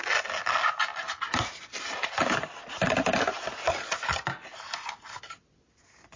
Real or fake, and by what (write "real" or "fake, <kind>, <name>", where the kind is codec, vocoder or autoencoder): real